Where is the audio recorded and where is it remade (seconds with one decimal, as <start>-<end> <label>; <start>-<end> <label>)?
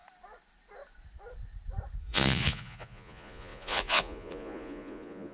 0.0-2.0 recorded; 2.0-5.3 remade